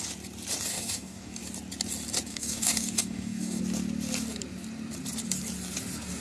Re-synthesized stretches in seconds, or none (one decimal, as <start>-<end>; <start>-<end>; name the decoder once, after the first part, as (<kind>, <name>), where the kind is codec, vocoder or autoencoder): 0.7-1.4 (codec, DAC); 2.3-3.6